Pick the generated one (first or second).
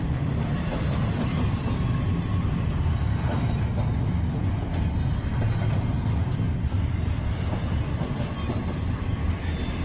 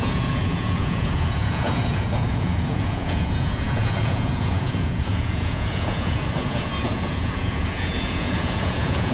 second